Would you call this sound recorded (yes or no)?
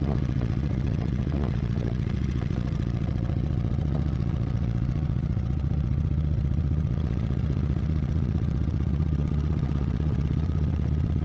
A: no